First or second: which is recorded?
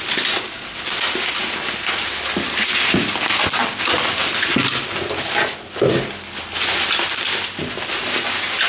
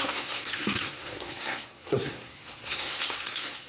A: first